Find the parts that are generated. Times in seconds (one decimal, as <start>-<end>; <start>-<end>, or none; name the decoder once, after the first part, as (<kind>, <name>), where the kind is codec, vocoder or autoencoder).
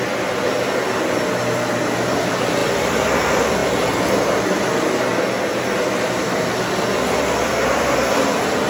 none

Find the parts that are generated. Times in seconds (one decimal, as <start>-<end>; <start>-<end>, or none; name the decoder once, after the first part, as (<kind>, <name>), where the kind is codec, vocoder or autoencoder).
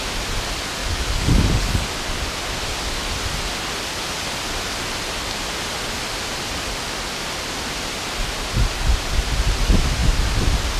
0.8-1.9 (codec, DAC)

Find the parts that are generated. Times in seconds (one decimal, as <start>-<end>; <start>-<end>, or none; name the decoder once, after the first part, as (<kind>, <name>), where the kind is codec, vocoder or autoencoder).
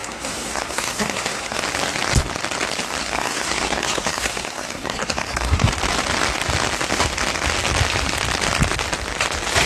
0.0-1.6 (codec, SNAC); 3.0-5.7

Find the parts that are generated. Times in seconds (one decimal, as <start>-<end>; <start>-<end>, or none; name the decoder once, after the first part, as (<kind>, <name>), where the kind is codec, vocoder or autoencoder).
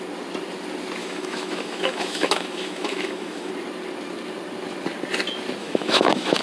1.0-3.5 (autoencoder, DAC-VAE); 5.6-6.4